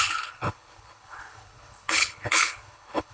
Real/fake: fake